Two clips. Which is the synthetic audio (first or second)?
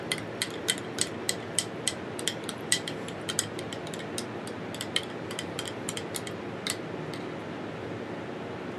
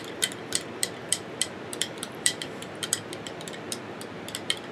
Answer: second